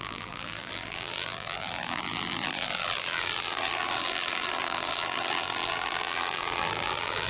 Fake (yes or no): yes